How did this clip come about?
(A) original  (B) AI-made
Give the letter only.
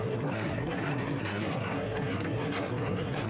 B